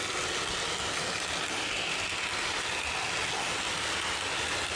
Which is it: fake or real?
real